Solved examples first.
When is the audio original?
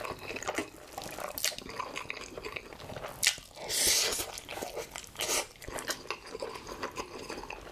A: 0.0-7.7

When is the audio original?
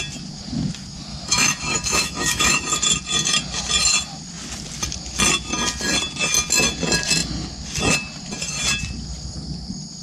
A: 0.0-1.1; 2.6-10.0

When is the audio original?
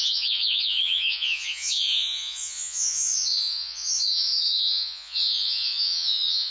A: none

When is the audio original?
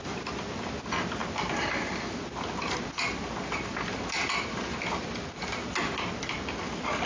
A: 0.0-7.1